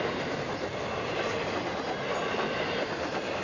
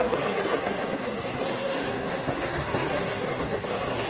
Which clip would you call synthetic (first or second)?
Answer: second